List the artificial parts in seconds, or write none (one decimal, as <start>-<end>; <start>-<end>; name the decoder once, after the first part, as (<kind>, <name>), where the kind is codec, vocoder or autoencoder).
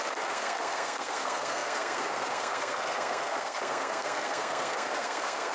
0.0-5.5 (codec, SNAC)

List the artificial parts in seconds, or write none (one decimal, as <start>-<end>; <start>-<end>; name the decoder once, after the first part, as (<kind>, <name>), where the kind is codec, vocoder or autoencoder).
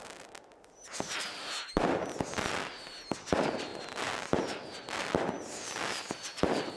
none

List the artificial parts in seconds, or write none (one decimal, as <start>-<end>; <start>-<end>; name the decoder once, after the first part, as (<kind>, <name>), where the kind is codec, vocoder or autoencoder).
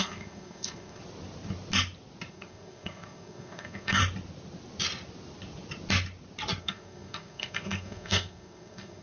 0.0-1.0 (codec, SNAC); 2.3-4.0; 6.6-9.0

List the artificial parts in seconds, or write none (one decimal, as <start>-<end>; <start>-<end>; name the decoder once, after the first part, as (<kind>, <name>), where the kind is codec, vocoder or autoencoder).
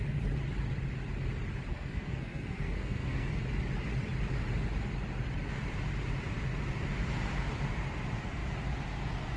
1.7-3.4 (codec, SNAC)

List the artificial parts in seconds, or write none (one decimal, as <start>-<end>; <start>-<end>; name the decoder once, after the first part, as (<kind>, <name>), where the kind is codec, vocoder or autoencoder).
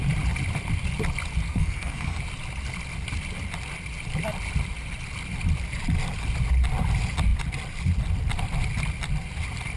1.5-2.2 (codec, SNAC)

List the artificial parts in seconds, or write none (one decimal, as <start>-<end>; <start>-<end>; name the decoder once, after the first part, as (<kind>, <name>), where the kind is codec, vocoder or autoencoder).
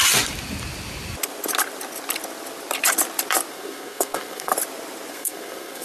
3.5-4.5 (codec, SNAC); 5.1-5.8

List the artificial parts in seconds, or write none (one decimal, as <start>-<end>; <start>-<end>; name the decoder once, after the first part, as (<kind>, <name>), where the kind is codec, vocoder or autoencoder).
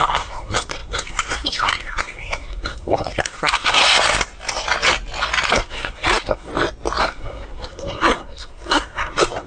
0.0-3.8 (codec, SNAC); 5.5-6.5; 7.0-9.5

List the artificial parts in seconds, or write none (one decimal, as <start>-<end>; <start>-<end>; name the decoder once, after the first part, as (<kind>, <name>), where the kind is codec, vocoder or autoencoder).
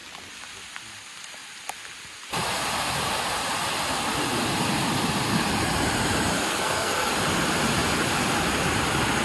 6.5-7.1 (codec, SNAC)